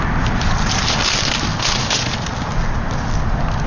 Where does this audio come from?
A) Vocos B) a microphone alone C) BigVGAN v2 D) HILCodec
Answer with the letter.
B